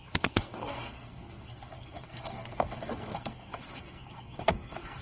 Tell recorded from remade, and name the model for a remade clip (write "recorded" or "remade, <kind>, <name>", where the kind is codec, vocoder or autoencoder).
remade, codec, SNAC